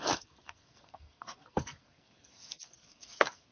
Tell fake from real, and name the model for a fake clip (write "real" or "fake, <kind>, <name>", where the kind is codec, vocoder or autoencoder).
fake, codec, SNAC